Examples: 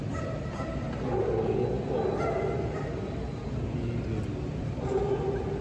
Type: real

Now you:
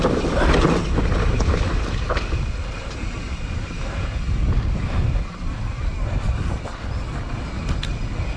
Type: real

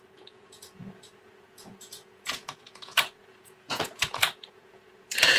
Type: fake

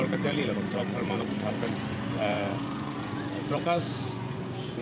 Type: fake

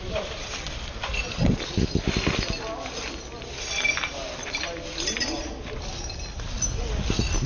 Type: real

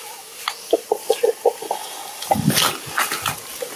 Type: real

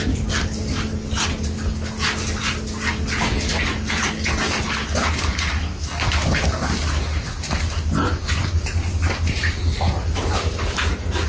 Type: real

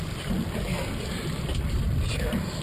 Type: real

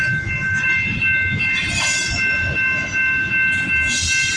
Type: real